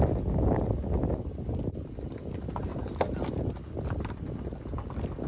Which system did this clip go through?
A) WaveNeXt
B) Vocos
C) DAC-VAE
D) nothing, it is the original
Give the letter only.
D